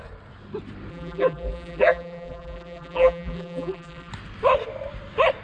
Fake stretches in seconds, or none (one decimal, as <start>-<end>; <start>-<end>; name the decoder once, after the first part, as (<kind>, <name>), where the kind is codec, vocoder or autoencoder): 0.9-4.1 (vocoder, BigVGAN v2)